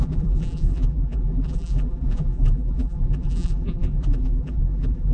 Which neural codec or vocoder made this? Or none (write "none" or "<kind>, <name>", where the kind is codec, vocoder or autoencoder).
vocoder, BigVGAN v2